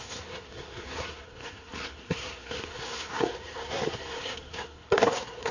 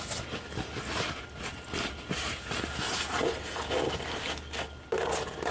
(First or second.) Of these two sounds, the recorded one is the second